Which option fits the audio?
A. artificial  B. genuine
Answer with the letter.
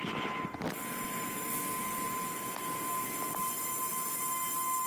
B